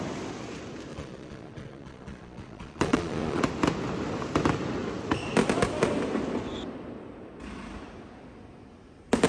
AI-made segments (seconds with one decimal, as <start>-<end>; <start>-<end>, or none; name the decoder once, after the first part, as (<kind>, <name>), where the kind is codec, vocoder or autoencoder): 0.9-3.4 (vocoder, Vocos)